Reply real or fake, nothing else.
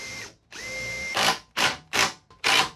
fake